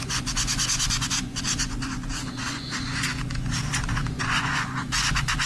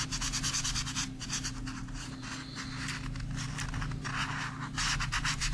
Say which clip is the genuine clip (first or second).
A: second